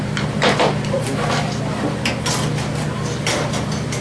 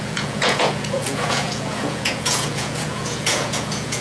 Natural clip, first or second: first